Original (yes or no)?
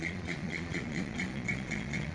no